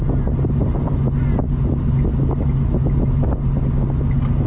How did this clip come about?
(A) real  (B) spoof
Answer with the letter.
A